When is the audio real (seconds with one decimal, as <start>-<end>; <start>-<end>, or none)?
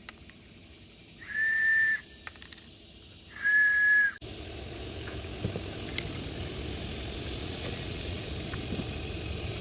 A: 0.0-7.4; 8.2-9.6